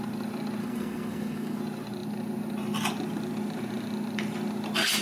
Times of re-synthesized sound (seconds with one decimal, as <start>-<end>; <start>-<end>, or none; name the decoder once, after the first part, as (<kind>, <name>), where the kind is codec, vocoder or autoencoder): 0.6-1.6 (codec, SNAC)